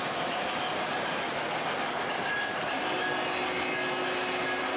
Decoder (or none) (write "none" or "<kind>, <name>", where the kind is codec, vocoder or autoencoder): none